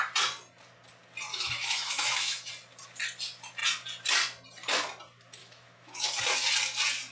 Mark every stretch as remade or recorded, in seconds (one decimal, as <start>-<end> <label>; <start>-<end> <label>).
0.0-1.3 recorded; 1.3-2.5 remade; 2.5-5.4 recorded; 5.4-6.2 remade; 6.2-7.1 recorded

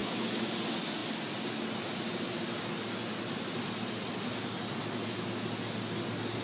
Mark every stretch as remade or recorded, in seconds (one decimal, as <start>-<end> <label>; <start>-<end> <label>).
0.0-0.5 remade; 0.5-6.4 recorded

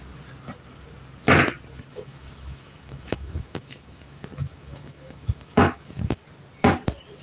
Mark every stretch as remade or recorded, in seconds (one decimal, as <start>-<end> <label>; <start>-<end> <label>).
0.0-1.9 recorded; 1.9-6.2 remade; 6.2-7.2 recorded

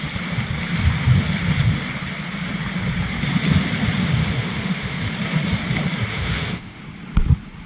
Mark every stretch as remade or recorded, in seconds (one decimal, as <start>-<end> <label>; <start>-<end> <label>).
0.0-4.2 recorded; 4.2-5.0 remade; 5.0-6.1 recorded; 6.1-6.8 remade; 6.8-7.7 recorded

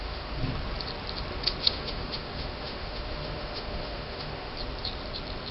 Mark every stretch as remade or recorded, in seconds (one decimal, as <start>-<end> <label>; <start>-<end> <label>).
0.0-0.4 remade; 0.4-1.6 recorded; 1.6-4.5 remade; 4.5-5.5 recorded

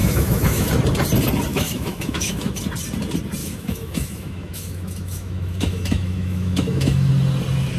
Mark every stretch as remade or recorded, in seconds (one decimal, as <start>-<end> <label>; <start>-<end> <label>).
0.0-0.7 remade; 0.7-1.5 recorded; 1.5-2.6 remade; 2.6-3.4 recorded; 3.4-7.1 remade; 7.1-7.8 recorded